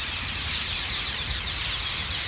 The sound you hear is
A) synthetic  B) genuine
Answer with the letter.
B